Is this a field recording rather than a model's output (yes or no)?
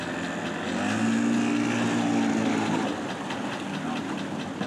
yes